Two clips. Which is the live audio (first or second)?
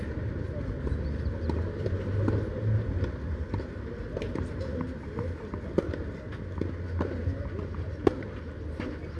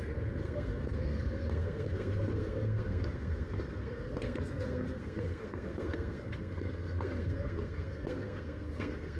first